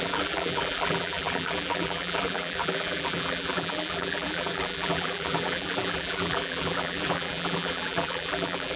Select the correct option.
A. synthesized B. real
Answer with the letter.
A